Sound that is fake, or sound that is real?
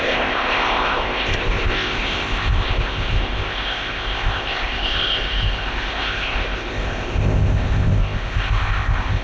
fake